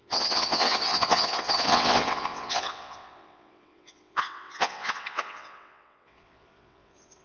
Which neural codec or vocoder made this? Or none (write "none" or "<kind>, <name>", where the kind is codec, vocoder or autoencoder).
vocoder, WaveNeXt